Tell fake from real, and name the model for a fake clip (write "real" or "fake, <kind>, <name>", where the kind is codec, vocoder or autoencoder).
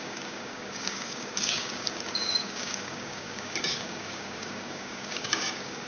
fake, codec, DAC